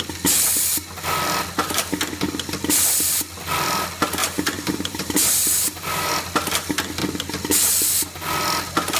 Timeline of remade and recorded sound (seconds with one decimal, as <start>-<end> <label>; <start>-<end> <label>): 0.0-4.2 recorded; 4.2-6.1 remade; 6.1-9.0 recorded